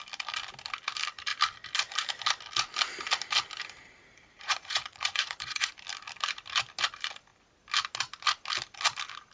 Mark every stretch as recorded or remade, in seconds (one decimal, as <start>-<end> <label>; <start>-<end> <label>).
0.0-4.3 recorded; 4.3-5.7 remade; 5.7-9.3 recorded